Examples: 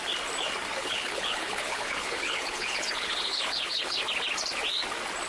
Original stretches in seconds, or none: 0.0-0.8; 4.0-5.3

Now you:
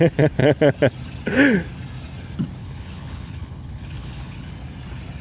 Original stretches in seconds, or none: 0.0-2.6; 4.5-5.2

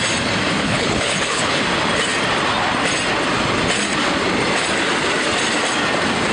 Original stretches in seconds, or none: 0.0-0.6; 1.6-6.3

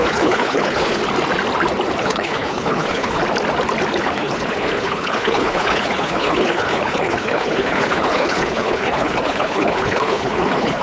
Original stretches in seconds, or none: 1.0-2.0; 3.2-4.0

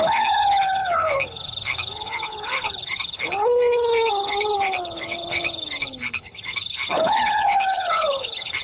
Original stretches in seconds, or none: none